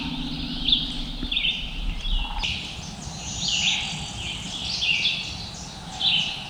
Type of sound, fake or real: real